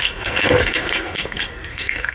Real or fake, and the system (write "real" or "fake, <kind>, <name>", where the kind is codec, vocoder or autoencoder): fake, codec, SNAC